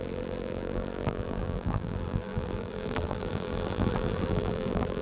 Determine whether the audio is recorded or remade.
remade